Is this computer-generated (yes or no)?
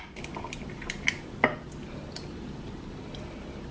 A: no